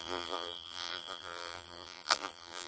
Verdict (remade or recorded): remade